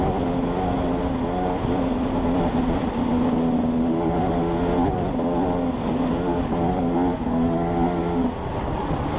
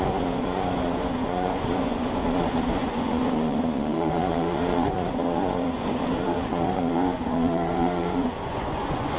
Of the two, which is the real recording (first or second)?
first